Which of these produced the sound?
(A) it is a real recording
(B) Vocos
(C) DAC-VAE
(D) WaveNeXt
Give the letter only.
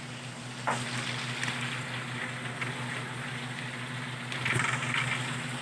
A